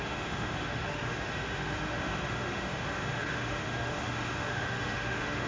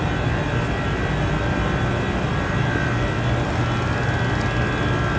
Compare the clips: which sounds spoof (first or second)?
first